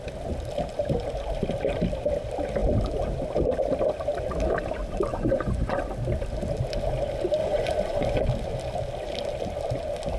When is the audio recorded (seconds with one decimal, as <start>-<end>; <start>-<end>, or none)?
0.0-5.1; 5.8-7.4; 8.2-10.2